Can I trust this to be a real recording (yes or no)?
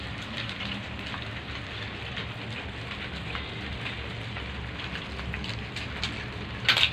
yes